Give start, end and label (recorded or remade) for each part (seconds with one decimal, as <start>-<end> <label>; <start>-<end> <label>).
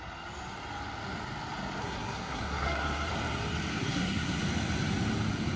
0.0-1.8 recorded; 1.8-3.1 remade; 3.1-3.7 recorded; 3.7-4.4 remade; 4.4-5.6 recorded